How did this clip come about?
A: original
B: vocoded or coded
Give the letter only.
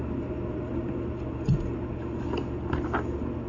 A